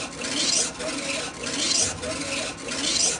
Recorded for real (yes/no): yes